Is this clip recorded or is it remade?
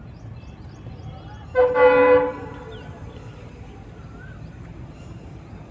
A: remade